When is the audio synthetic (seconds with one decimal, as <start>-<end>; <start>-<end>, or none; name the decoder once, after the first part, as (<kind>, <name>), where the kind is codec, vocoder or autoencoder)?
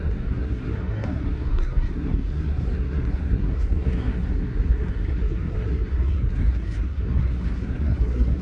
0.0-8.4 (codec, SNAC)